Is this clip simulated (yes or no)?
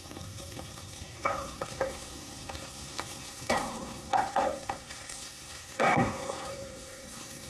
yes